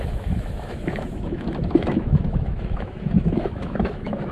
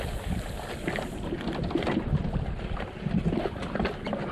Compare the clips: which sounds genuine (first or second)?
second